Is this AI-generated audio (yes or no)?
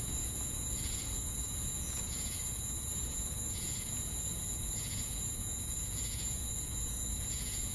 yes